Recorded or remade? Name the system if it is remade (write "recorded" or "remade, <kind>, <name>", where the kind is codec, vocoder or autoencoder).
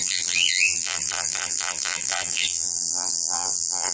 remade, vocoder, BigVGAN v2